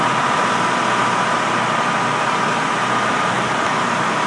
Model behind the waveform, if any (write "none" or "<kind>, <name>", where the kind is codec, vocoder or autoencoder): none